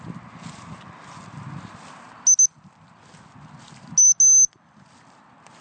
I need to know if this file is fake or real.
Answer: real